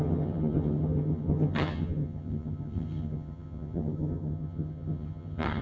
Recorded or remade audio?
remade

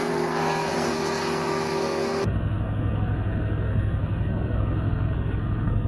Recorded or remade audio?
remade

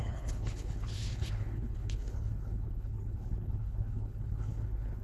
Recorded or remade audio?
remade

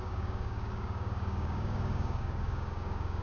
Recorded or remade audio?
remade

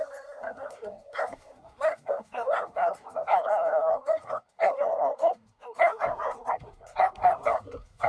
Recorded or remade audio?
remade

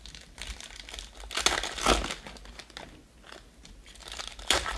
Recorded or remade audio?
recorded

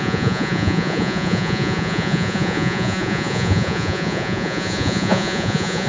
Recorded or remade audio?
remade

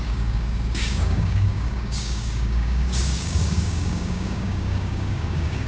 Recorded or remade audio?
remade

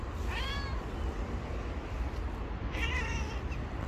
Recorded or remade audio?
recorded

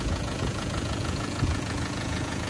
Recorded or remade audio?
remade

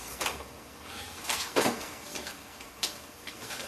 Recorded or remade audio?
remade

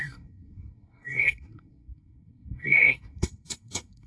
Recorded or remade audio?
remade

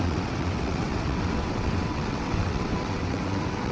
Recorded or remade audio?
remade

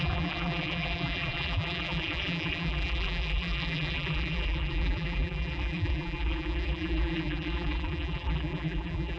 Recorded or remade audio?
remade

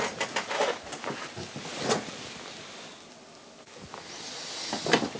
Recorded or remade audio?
recorded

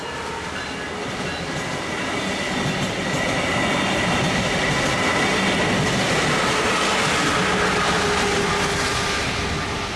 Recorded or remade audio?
recorded